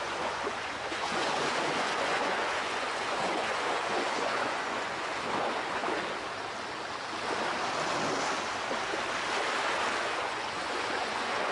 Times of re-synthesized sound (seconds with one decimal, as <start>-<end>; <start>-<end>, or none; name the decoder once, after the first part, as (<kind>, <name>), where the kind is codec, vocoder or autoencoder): 0.0-5.8 (vocoder, Vocos); 10.0-11.5

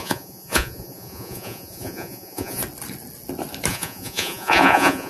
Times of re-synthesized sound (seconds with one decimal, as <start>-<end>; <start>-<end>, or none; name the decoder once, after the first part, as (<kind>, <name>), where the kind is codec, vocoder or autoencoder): 0.0-2.6 (vocoder, Vocos); 3.7-5.1

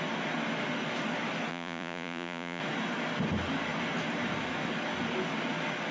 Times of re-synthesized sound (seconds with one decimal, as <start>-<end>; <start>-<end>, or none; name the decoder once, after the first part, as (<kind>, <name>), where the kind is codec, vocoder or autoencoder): 1.5-2.6 (vocoder, Vocos)

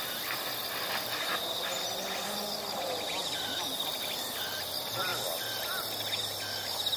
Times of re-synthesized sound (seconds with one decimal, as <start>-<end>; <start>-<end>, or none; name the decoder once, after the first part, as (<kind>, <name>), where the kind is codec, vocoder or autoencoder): none

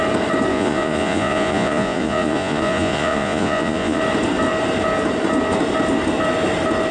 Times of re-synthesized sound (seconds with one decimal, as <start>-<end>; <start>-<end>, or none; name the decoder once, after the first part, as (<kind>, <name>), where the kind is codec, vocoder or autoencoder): 0.5-4.0 (vocoder, Vocos)

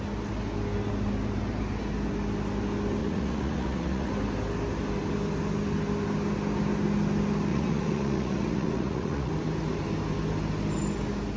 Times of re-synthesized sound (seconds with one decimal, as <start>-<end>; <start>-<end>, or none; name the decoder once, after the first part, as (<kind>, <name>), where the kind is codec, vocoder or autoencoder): 3.0-4.1 (vocoder, Vocos); 7.5-9.3

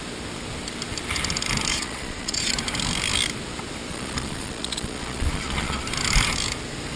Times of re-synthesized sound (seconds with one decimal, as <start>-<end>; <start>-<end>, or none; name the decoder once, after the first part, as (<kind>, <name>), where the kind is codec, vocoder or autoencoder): 1.7-2.5 (vocoder, Vocos); 3.9-5.8